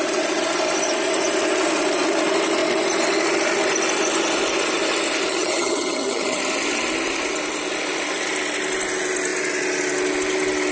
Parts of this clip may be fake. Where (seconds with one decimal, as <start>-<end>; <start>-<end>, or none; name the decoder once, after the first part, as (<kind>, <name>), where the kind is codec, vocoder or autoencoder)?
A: 5.3-6.4 (vocoder, HiFi-GAN)